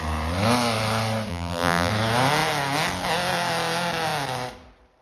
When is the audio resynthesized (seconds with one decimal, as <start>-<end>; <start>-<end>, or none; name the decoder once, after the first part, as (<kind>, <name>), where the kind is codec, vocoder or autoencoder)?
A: 1.3-1.9 (vocoder, BigVGAN v2)